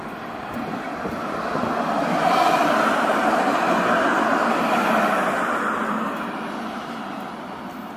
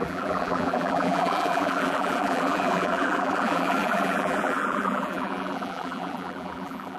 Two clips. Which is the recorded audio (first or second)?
first